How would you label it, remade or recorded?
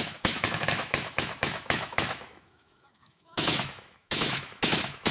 remade